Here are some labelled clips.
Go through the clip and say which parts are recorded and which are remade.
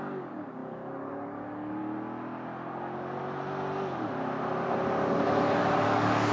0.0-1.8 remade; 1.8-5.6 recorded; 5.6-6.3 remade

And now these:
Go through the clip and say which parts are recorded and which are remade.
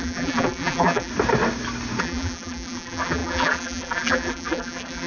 0.0-1.1 remade; 1.1-2.0 recorded; 2.0-5.1 remade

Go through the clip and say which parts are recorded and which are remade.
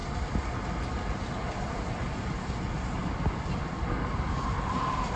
0.0-5.2 recorded